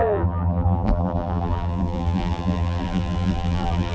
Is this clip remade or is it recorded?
remade